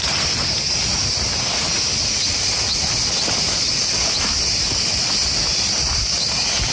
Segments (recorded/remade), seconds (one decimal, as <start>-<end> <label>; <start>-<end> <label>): 0.0-6.7 recorded